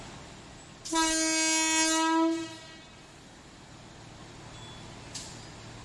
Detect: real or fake real